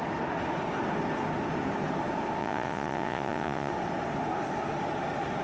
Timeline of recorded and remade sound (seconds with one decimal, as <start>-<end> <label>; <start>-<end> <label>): 0.0-2.4 recorded; 2.4-3.7 remade; 3.7-5.4 recorded